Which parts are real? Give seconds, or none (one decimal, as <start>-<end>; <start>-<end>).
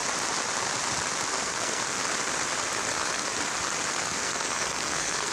0.0-1.3; 2.0-2.9; 3.3-3.9